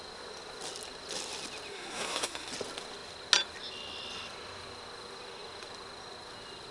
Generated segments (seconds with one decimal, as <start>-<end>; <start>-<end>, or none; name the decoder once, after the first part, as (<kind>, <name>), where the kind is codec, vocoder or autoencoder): 1.7-2.5 (codec, SNAC)